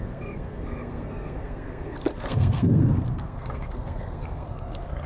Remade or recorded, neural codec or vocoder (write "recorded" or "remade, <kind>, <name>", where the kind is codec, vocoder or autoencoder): remade, codec, SNAC